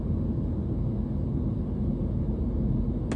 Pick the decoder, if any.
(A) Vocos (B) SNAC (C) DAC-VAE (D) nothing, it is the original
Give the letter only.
D